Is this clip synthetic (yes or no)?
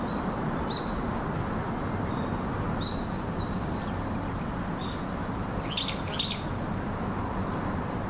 no